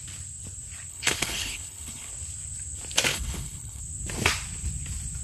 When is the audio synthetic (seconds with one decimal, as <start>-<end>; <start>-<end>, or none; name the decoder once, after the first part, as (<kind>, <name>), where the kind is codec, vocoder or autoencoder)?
0.9-2.1 (codec, HILCodec); 3.1-3.8